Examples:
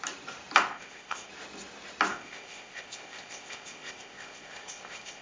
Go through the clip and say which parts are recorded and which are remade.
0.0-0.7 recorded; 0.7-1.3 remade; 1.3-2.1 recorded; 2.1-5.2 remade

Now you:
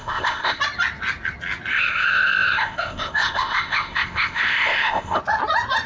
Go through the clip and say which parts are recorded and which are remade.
0.0-0.6 remade; 0.6-1.7 recorded; 1.7-5.2 remade; 5.2-5.9 recorded

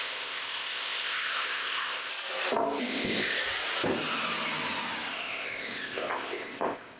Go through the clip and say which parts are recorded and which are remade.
0.0-2.1 remade; 2.1-2.8 recorded; 2.8-3.4 remade; 3.4-5.1 recorded; 5.1-7.0 remade